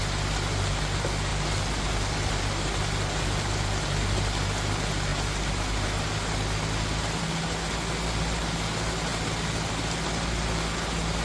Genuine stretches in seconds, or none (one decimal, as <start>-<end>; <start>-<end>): 0.0-11.2